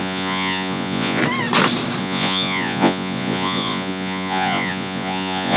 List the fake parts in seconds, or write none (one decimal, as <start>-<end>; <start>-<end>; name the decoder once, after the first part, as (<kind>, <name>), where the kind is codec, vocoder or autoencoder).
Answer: 0.0-1.2 (vocoder, Vocos); 2.0-5.6

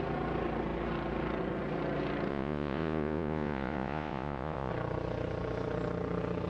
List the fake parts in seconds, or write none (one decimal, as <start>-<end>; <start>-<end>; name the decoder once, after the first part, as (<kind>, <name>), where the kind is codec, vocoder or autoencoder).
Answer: 2.3-4.7 (vocoder, Vocos)